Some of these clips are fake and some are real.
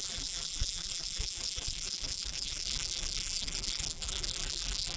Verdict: fake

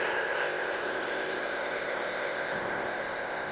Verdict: fake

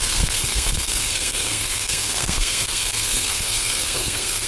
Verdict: fake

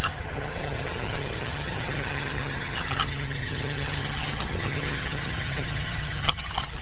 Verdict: fake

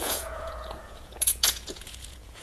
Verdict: fake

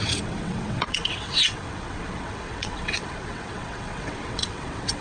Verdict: fake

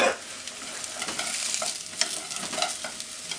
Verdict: real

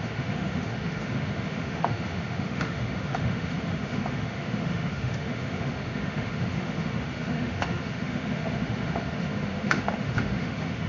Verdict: fake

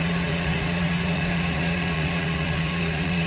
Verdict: fake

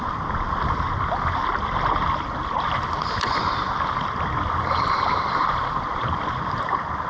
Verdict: fake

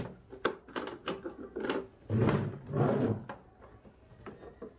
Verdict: real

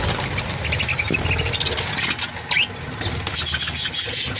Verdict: real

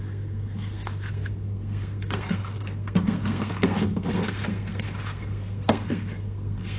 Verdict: fake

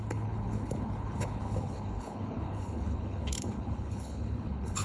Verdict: fake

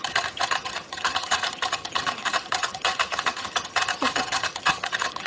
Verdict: fake